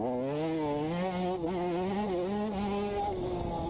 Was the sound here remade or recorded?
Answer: recorded